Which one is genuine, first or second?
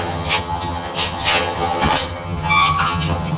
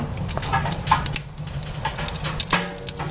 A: second